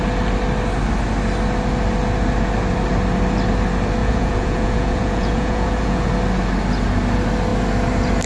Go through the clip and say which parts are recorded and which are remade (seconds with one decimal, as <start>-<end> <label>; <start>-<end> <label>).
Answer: 0.0-4.0 recorded; 4.0-6.1 remade; 6.1-8.3 recorded